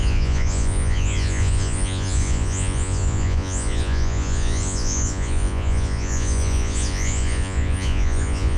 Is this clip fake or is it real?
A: fake